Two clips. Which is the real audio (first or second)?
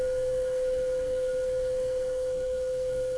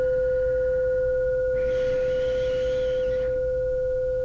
second